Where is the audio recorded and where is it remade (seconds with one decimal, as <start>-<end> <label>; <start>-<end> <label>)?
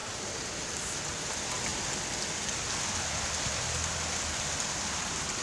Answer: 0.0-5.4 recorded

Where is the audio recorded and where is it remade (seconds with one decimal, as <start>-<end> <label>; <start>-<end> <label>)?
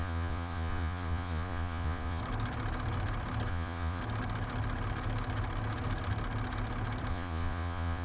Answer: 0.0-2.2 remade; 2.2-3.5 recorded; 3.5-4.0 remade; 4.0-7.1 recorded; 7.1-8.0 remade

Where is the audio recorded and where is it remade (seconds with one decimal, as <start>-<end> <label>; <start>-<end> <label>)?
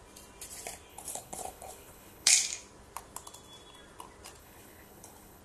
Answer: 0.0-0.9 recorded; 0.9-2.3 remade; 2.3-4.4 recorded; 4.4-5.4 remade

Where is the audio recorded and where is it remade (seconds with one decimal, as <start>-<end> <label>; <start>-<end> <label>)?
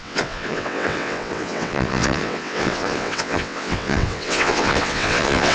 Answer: 0.0-5.5 remade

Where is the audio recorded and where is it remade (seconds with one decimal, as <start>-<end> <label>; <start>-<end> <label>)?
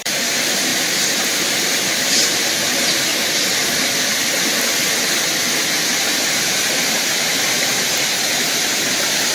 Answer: 0.0-0.7 remade; 0.7-2.0 recorded; 2.0-3.1 remade; 3.1-5.9 recorded; 5.9-9.3 remade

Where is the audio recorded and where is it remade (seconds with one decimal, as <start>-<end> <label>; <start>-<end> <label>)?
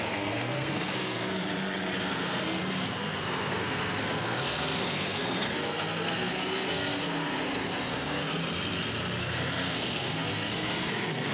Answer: 0.0-1.4 remade; 1.4-2.0 recorded; 2.0-8.4 remade; 8.4-9.2 recorded; 9.2-11.3 remade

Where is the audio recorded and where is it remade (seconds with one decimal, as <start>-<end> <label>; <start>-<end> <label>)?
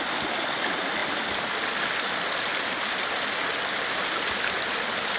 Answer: 0.0-5.2 recorded